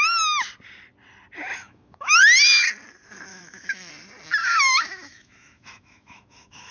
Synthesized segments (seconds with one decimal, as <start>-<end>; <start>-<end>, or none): 1.5-2.2; 3.3-3.9; 4.4-6.7